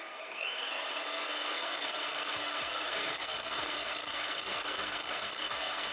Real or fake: fake